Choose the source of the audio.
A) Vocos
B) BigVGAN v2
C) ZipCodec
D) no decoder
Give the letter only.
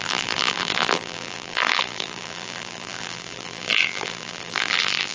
B